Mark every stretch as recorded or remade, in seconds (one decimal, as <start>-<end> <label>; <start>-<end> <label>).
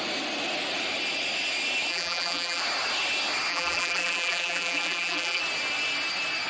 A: 0.0-1.9 recorded; 1.9-2.6 remade; 2.6-3.5 recorded; 3.5-5.4 remade; 5.4-6.5 recorded